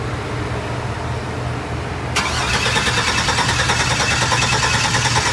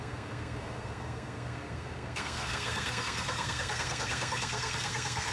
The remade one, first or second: second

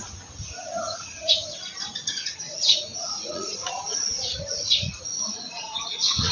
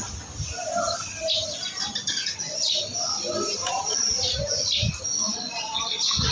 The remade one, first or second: first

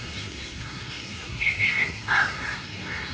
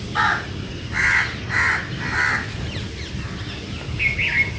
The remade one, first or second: first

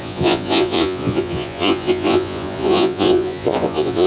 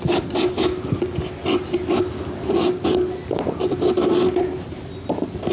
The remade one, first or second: first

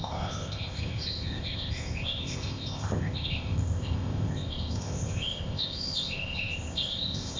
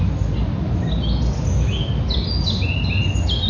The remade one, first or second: first